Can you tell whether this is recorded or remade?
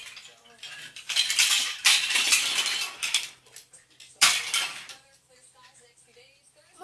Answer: remade